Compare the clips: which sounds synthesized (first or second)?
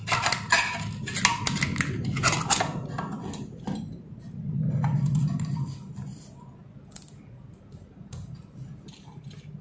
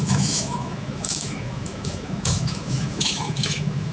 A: second